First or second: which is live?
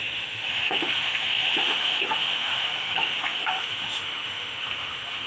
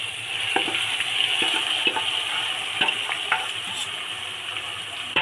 second